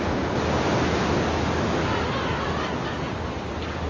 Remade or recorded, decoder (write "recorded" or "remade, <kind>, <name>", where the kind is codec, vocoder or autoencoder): recorded